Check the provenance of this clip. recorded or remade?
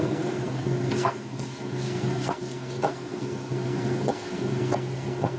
remade